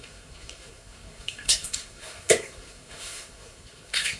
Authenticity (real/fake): fake